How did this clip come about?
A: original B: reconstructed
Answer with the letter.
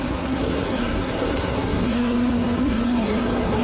B